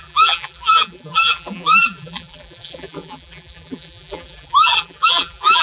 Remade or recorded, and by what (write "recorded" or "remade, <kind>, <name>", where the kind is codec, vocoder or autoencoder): remade, vocoder, BigVGAN v2